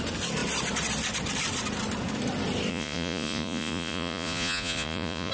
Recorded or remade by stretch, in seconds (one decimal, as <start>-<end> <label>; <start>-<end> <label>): 0.0-2.7 recorded; 2.7-5.3 remade